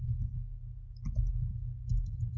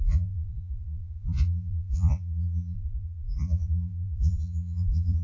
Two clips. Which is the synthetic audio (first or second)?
second